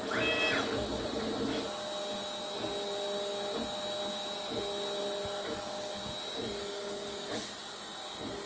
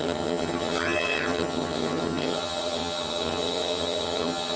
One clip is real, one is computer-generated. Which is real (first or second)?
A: first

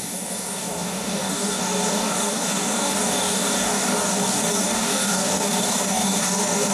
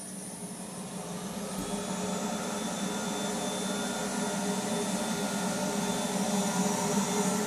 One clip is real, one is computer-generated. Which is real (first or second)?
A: second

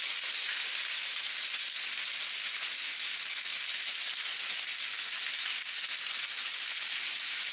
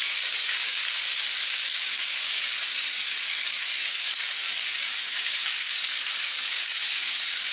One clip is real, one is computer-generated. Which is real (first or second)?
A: first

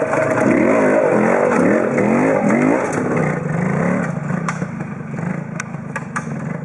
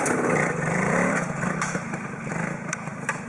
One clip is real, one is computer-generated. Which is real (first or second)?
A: first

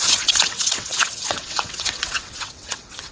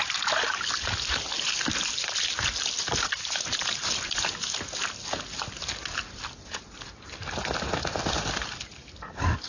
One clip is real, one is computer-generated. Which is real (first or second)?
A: second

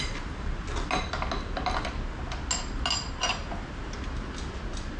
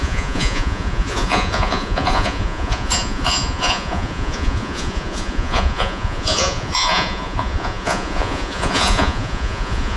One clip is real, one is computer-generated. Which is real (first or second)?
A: first